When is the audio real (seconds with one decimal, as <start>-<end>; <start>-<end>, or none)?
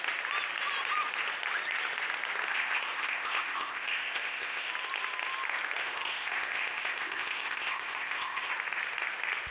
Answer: 0.0-2.5; 4.7-5.8; 8.5-9.5